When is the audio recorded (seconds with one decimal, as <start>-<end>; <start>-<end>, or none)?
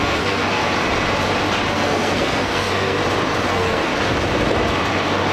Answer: 0.6-1.7; 3.0-3.5; 3.9-5.3